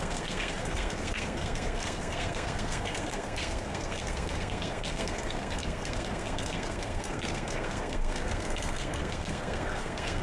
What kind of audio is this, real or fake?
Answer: fake